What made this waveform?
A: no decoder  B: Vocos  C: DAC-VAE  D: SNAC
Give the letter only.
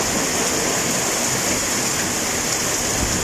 A